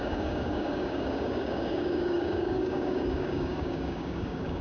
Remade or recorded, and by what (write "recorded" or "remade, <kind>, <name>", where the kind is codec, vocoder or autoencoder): remade, codec, DAC